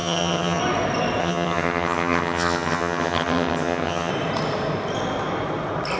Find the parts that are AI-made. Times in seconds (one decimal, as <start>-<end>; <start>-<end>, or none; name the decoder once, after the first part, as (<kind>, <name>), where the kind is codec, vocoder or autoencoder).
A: 0.0-0.6 (vocoder, HiFi-GAN); 1.2-4.1